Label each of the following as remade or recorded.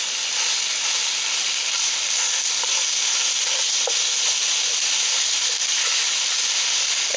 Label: recorded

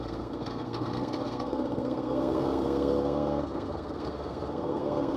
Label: remade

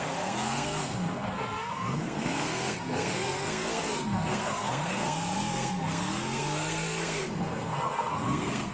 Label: remade